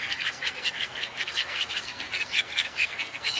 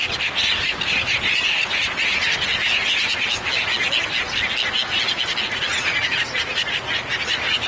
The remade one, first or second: first